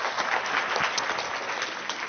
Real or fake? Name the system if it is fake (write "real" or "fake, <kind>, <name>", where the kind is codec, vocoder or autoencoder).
real